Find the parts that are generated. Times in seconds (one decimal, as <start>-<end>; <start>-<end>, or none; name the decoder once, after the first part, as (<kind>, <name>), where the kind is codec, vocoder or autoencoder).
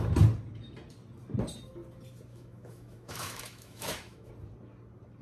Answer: 2.3-4.3 (autoencoder, DAC-VAE)